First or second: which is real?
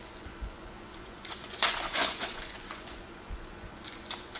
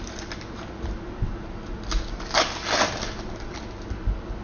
second